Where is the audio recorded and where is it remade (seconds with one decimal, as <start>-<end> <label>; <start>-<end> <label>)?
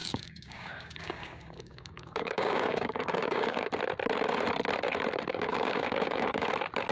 0.0-3.7 remade; 3.7-5.3 recorded; 5.3-6.5 remade; 6.5-6.9 recorded